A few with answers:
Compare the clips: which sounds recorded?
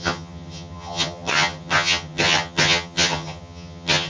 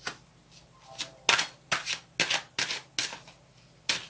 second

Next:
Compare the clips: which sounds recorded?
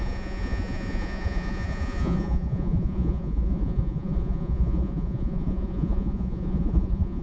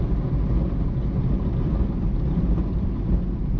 second